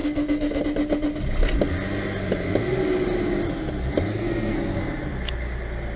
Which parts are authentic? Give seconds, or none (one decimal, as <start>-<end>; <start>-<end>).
0.6-4.1; 4.6-6.0